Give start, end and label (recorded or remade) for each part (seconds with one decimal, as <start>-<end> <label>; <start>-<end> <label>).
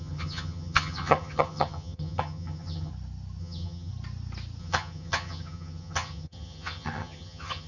0.0-2.9 remade; 2.9-3.4 recorded; 3.4-3.9 remade; 3.9-4.6 recorded; 4.6-7.7 remade